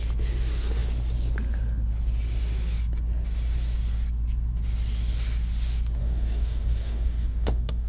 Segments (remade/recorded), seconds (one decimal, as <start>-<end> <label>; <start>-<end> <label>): 0.0-6.0 recorded; 6.0-7.9 remade